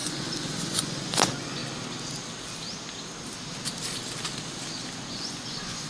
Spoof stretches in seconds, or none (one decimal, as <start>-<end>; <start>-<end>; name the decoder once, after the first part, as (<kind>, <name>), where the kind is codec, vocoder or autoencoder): 0.0-1.6 (vocoder, Vocos); 5.1-5.9